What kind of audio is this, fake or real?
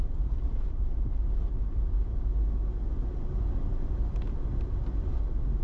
real